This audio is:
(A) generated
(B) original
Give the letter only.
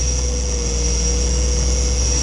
B